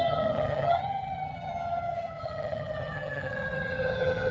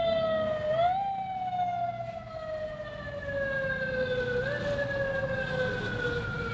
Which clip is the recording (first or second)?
second